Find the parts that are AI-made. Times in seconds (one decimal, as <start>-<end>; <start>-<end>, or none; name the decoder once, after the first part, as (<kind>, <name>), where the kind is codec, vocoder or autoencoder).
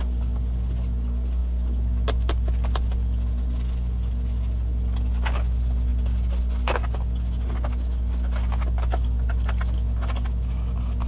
none